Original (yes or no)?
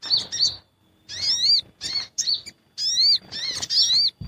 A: yes